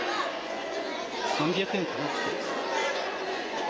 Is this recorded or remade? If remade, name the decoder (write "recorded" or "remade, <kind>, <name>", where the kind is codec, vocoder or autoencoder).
remade, vocoder, Vocos